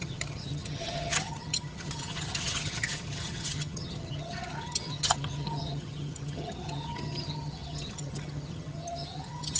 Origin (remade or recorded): remade